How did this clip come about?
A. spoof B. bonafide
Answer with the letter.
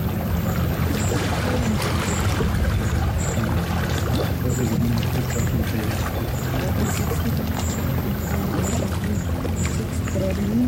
B